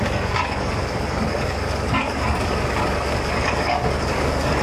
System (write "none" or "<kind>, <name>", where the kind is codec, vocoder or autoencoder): codec, DAC